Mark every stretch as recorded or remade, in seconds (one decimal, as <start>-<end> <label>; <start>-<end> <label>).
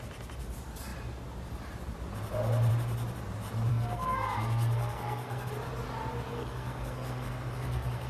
0.0-3.7 recorded; 3.7-5.5 remade; 5.5-6.3 recorded; 6.3-8.1 remade